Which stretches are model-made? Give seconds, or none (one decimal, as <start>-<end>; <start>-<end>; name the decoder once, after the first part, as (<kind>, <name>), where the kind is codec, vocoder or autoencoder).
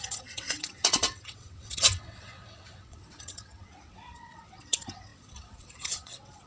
0.0-6.5 (vocoder, WaveNeXt)